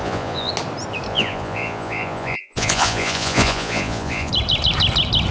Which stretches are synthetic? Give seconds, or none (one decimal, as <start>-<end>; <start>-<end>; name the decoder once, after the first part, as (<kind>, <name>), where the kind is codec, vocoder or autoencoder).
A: 0.0-0.5 (vocoder, Vocos); 1.1-4.3